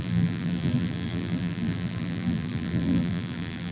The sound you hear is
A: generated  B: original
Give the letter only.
A